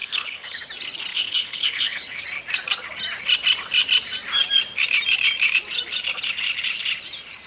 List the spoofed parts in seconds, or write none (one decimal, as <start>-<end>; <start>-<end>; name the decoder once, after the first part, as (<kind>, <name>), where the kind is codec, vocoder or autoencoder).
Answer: 0.0-0.6 (codec, HILCodec); 1.1-2.2